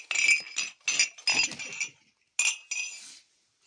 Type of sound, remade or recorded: recorded